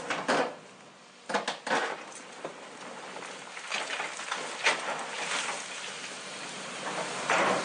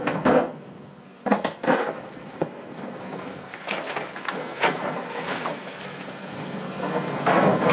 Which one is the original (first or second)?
first